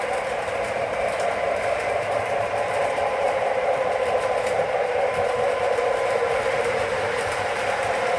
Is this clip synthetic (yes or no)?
yes